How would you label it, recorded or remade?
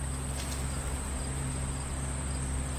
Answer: recorded